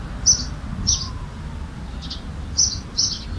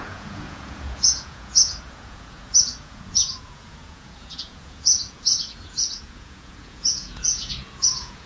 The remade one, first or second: second